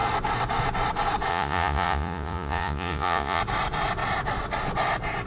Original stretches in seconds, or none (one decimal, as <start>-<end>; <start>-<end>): 0.0-1.3; 3.4-5.3